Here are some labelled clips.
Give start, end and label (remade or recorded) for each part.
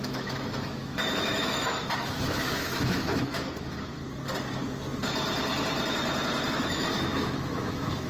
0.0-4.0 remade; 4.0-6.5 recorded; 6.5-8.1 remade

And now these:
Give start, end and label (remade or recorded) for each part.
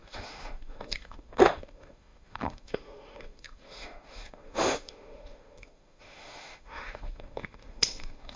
0.0-8.4 remade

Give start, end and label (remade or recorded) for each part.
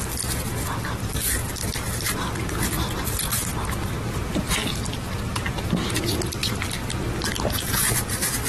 0.0-8.5 recorded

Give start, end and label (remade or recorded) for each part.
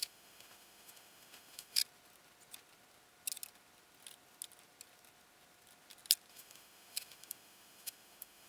0.0-1.8 remade; 1.8-6.3 recorded; 6.3-8.5 remade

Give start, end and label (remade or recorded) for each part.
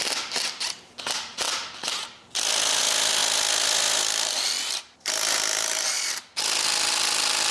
0.0-7.5 recorded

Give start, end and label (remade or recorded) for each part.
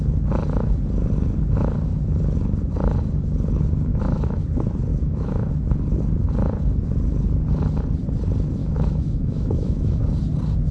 0.0-3.9 recorded; 3.9-4.4 remade; 4.4-4.9 recorded; 4.9-5.5 remade; 5.5-8.6 recorded; 8.6-10.0 remade; 10.0-10.7 recorded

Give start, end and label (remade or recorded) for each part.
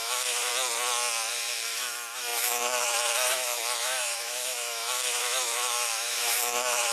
0.0-0.5 remade; 0.5-1.3 recorded; 1.3-6.9 remade